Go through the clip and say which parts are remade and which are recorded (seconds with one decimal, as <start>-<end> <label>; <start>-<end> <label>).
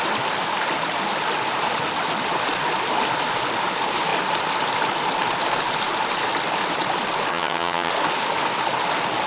0.0-7.3 recorded; 7.3-7.9 remade; 7.9-9.3 recorded